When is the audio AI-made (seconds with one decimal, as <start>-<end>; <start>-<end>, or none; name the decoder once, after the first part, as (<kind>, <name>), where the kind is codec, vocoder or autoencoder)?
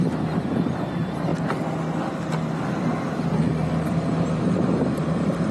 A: 0.0-1.3 (vocoder, BigVGAN v2); 3.0-5.5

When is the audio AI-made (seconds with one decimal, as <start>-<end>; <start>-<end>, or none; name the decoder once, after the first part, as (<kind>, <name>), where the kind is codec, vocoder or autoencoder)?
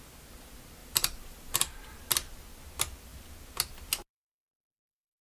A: 0.8-1.8 (vocoder, BigVGAN v2)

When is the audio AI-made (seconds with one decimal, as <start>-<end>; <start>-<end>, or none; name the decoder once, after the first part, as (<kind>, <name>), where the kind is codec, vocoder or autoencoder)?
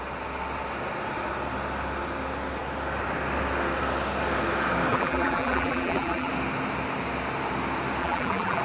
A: 4.9-6.3 (vocoder, BigVGAN v2); 8.0-8.6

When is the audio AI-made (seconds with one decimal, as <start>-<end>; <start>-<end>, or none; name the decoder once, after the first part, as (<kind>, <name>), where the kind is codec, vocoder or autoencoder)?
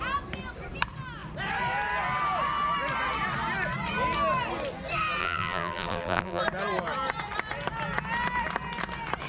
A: 5.2-6.4 (vocoder, BigVGAN v2)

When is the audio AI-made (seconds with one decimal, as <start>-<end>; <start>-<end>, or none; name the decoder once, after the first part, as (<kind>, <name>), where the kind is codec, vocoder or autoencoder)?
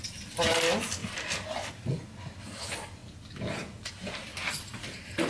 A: 4.3-5.3 (vocoder, BigVGAN v2)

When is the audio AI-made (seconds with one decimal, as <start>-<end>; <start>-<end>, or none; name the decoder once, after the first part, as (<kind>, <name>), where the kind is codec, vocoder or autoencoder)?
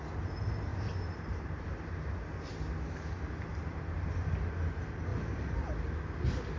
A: 0.7-2.2 (vocoder, BigVGAN v2); 3.5-4.1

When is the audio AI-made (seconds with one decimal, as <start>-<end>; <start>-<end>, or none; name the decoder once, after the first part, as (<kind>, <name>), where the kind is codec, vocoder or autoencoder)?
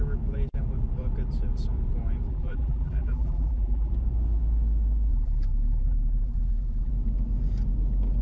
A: 2.3-3.9 (vocoder, BigVGAN v2); 5.1-6.9